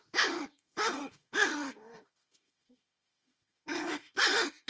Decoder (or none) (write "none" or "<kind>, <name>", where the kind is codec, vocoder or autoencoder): autoencoder, DAC-VAE